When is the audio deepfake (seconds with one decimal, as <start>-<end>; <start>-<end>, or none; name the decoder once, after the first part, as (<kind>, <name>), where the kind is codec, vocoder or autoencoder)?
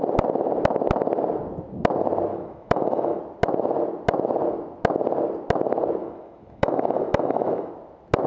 2.3-3.2 (autoencoder, DAC-VAE); 6.0-7.7